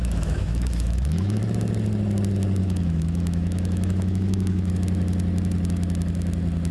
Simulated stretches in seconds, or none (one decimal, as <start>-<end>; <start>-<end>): 0.0-1.4; 2.6-4.7